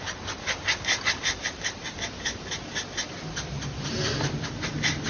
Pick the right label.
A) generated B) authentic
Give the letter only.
B